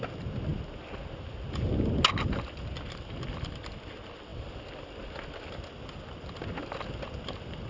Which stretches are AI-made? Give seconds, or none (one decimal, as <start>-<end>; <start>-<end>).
none